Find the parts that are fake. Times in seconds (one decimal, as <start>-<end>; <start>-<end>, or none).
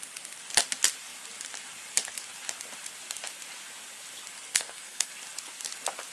4.5-5.1